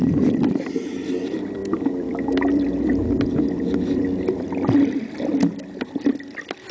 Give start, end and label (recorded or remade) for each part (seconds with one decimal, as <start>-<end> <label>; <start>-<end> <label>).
0.0-1.6 recorded; 1.6-4.5 remade; 4.5-6.7 recorded